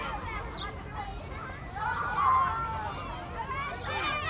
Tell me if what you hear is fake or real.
real